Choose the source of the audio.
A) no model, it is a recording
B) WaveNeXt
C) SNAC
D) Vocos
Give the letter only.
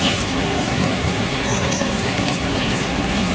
C